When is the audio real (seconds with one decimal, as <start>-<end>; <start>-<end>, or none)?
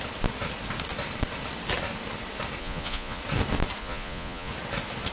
0.0-2.6; 3.2-3.8; 4.5-5.1